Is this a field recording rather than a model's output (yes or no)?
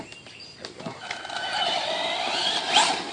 yes